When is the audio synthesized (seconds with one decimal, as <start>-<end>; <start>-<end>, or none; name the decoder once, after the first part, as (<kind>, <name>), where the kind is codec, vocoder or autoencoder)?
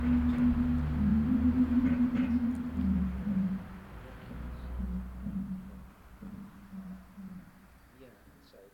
none